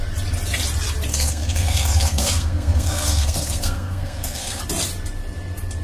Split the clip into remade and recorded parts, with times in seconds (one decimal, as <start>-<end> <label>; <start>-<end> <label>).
0.0-1.1 recorded; 1.1-4.6 remade; 4.6-5.8 recorded